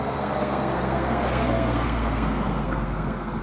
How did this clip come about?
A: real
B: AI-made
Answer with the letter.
B